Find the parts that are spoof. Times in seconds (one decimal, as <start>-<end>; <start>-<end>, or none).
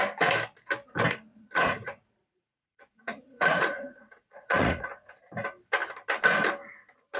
1.3-5.2